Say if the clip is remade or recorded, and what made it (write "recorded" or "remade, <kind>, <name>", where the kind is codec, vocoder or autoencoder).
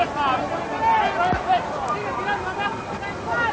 recorded